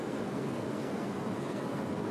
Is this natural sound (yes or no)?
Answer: no